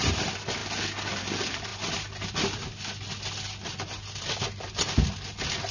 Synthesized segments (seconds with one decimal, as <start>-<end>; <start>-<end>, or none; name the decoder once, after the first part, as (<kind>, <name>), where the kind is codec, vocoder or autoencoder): none